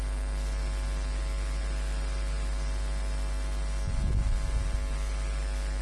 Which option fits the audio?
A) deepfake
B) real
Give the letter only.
B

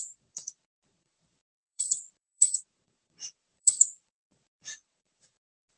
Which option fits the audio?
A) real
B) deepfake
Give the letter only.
B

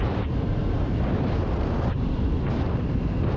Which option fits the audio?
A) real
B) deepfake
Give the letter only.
B